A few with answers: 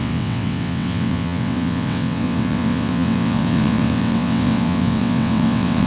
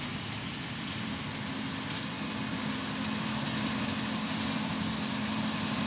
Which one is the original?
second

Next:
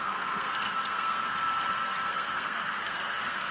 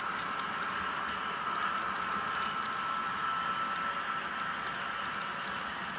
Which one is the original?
second